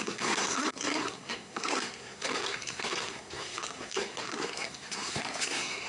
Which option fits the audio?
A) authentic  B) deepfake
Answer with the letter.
B